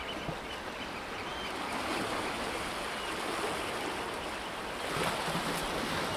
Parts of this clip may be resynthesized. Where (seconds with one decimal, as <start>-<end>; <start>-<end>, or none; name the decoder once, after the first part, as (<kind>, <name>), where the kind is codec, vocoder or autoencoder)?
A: none